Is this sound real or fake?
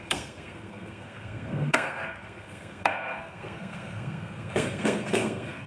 fake